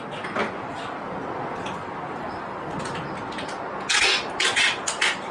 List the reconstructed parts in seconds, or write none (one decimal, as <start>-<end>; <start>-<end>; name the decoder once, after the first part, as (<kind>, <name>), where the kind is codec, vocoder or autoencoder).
none